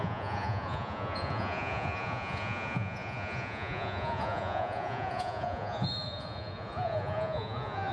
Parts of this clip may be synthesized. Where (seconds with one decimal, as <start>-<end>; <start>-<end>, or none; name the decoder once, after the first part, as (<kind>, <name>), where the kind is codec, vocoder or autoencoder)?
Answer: 0.0-7.9 (vocoder, Vocos)